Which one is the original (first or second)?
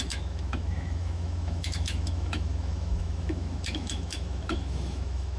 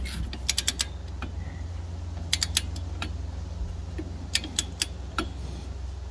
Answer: second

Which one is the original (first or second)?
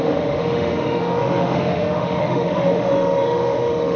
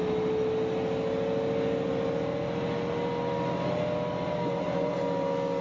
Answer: second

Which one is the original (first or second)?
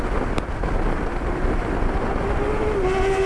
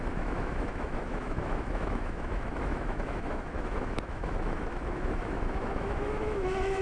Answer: first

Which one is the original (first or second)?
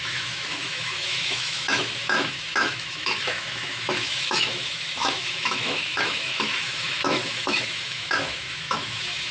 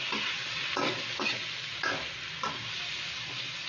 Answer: second